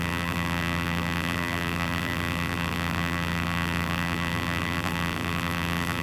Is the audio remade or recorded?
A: remade